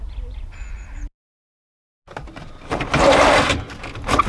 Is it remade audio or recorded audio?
recorded